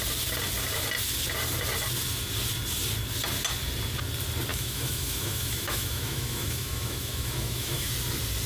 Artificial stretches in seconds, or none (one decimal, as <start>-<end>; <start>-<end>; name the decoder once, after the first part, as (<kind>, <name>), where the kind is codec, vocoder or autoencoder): 4.5-7.9 (autoencoder, DAC-VAE)

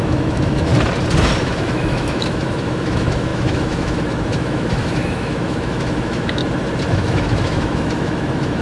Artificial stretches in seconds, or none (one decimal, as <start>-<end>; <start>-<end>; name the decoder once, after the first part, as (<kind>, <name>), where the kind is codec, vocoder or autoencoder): 0.0-0.7 (autoencoder, DAC-VAE); 1.4-6.4; 6.9-8.6